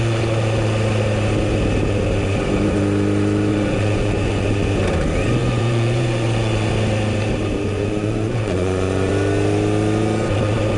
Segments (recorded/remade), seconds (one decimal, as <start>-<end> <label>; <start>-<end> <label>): 0.0-3.5 recorded; 3.5-4.7 remade; 4.7-5.4 recorded; 5.4-6.7 remade; 6.7-7.7 recorded; 7.7-9.1 remade; 9.1-10.8 recorded